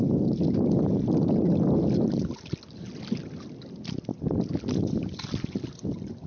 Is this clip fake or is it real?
real